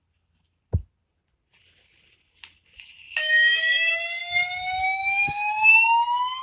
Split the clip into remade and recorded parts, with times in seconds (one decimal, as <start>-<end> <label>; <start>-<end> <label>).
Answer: 0.0-3.2 recorded; 3.2-4.2 remade; 4.2-4.8 recorded; 4.8-5.7 remade; 5.7-6.4 recorded